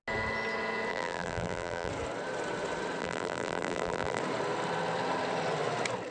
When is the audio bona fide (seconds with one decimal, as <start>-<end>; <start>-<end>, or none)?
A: 0.0-0.9; 1.9-3.0; 4.2-6.1